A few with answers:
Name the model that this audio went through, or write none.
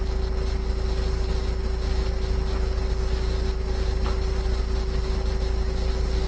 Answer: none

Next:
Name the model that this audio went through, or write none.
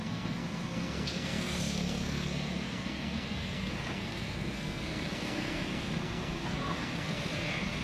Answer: codec, SNAC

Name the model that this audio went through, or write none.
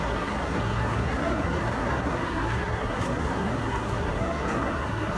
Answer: codec, SNAC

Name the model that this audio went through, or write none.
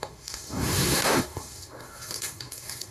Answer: codec, SNAC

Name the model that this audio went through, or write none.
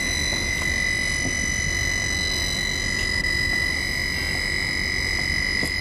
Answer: none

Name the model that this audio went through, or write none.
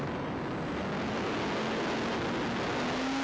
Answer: none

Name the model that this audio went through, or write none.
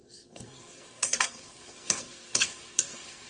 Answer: codec, SNAC